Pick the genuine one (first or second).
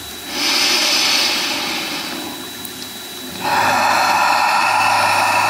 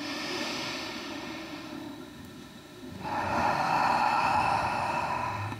first